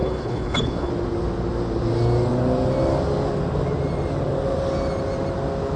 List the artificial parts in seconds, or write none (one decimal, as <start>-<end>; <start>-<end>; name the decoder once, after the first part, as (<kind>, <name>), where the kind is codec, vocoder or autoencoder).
0.0-0.9 (codec, HILCodec)